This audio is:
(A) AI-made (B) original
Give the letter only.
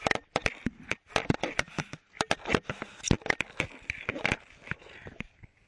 B